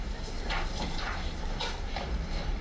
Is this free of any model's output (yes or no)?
no